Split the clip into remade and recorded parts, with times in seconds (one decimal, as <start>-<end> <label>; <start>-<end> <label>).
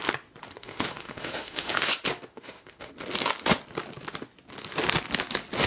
0.0-0.6 recorded; 0.6-1.9 remade; 1.9-2.3 recorded; 2.3-2.9 remade; 2.9-5.7 recorded